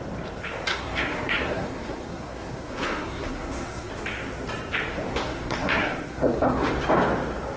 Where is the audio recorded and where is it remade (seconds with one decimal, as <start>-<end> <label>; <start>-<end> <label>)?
0.0-0.7 recorded; 0.7-3.9 remade; 3.9-5.1 recorded; 5.1-6.7 remade; 6.7-7.6 recorded